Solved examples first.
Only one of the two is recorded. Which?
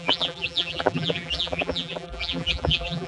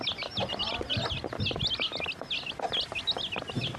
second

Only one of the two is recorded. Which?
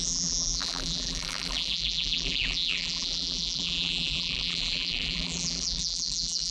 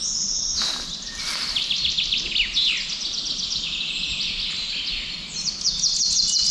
second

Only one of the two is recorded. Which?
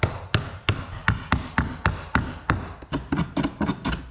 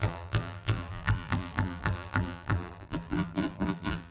first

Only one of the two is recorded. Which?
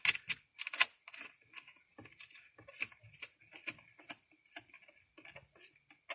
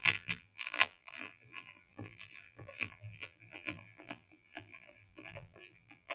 first